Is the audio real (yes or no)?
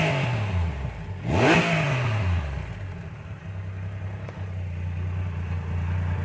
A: yes